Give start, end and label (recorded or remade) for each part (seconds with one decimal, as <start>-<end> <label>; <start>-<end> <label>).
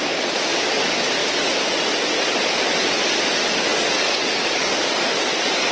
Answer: 0.0-3.7 recorded; 3.7-5.3 remade; 5.3-5.7 recorded